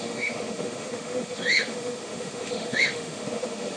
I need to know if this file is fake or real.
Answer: fake